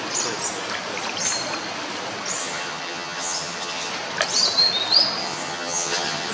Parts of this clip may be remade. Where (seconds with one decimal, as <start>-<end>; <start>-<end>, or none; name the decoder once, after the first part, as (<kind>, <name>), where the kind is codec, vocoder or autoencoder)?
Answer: 2.4-3.9 (vocoder, HiFi-GAN); 5.2-6.3